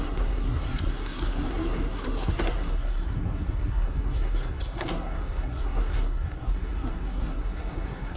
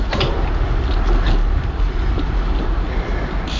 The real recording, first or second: second